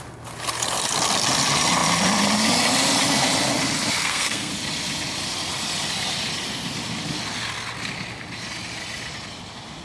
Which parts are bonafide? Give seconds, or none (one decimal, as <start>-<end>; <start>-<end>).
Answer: 0.0-4.0; 4.5-9.8